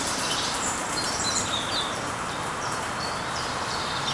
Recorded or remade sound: remade